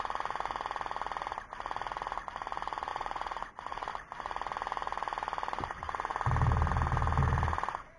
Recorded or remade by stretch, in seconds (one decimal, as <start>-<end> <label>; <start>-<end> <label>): 0.0-2.9 recorded; 2.9-3.9 remade; 3.9-8.0 recorded

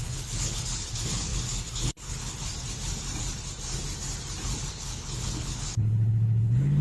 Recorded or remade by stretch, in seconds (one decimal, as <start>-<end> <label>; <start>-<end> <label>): 0.0-2.5 remade; 2.5-4.7 recorded; 4.7-6.8 remade

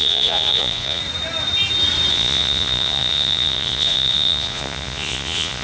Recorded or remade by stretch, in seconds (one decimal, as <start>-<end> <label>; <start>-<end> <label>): 0.0-1.0 remade; 1.0-2.1 recorded; 2.1-5.6 remade

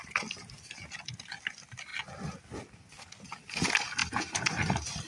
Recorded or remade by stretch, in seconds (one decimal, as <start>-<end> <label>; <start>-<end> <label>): 0.0-5.1 recorded

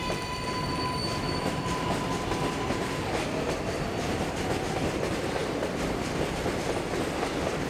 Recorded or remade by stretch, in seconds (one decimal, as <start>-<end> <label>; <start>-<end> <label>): 0.0-1.0 recorded; 1.0-1.5 remade; 1.5-7.7 recorded

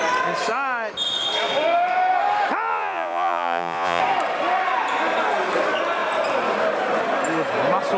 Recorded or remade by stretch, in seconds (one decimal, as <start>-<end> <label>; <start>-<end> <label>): 0.0-2.7 recorded; 2.7-4.0 remade; 4.0-8.0 recorded

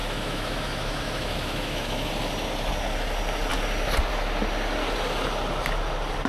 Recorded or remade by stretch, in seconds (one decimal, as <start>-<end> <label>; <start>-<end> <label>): 0.0-2.1 remade; 2.1-6.3 recorded

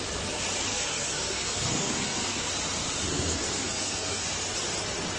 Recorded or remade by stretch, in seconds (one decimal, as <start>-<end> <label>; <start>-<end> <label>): 0.0-0.7 recorded; 0.7-2.5 remade; 2.5-3.1 recorded; 3.1-4.3 remade; 4.3-5.2 recorded